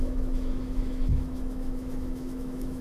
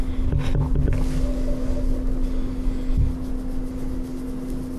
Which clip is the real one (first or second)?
second